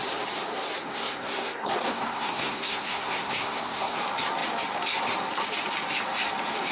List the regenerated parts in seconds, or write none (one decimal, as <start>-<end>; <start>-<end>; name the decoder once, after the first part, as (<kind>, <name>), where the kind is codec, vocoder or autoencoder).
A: 0.8-4.0 (codec, SNAC)